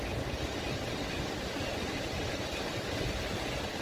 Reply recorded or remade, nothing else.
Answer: recorded